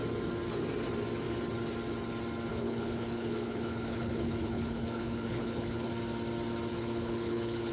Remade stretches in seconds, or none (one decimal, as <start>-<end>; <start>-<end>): 2.5-5.9; 6.7-7.7